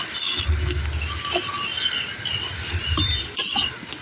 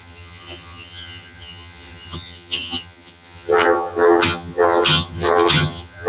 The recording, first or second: first